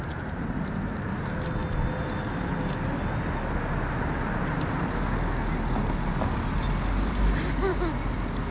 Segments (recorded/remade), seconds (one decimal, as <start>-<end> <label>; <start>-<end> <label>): 0.0-8.5 recorded